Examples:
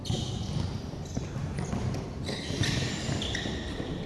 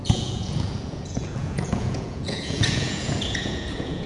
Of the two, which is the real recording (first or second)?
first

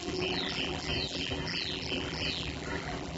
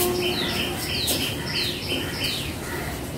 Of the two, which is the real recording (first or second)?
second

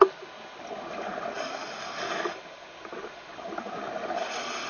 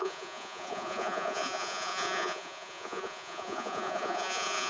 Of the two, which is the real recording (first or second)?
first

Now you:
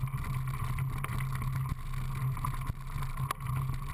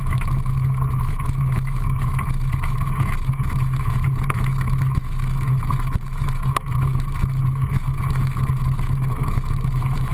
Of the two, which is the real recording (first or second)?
first